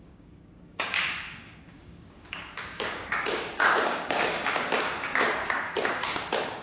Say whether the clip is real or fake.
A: fake